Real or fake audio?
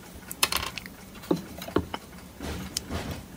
fake